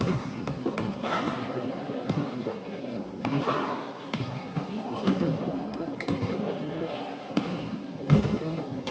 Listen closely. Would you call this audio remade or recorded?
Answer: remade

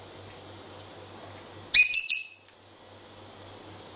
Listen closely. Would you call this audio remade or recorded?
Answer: recorded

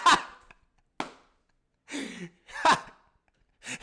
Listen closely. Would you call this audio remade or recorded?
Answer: recorded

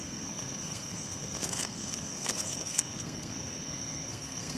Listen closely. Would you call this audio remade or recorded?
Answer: remade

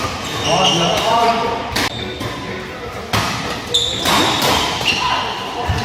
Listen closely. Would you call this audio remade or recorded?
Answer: recorded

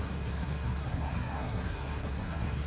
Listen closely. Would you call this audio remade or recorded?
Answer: remade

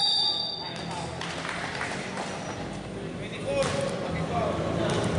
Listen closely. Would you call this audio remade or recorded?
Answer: recorded